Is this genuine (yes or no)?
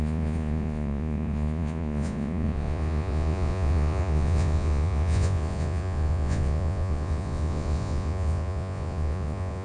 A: no